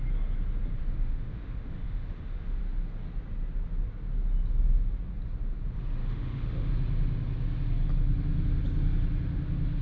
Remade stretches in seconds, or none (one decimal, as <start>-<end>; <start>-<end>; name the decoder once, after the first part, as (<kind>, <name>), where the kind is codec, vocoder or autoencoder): 0.8-2.6 (autoencoder, DAC-VAE); 6.0-6.7